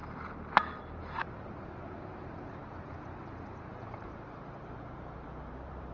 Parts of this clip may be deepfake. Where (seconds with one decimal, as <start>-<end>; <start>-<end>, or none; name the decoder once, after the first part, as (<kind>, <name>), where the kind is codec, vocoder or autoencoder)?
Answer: 1.0-5.9 (vocoder, BigVGAN v2)